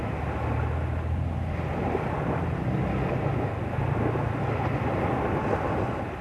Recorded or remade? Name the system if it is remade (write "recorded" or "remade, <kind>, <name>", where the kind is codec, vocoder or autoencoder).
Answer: recorded